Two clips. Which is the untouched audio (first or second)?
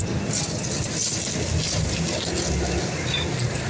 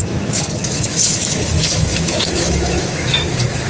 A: first